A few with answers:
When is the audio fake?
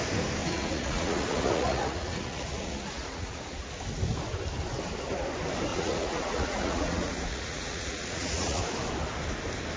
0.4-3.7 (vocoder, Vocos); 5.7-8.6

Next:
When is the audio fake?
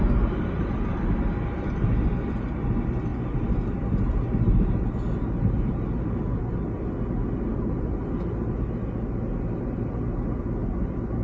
none